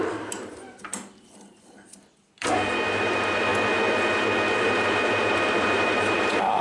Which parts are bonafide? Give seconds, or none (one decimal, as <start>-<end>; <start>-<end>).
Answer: 0.9-3.0; 3.5-4.6